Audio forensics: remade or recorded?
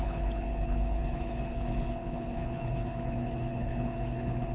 remade